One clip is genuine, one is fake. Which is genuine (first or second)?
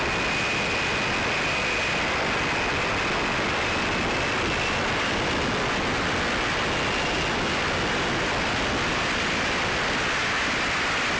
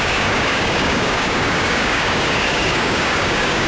first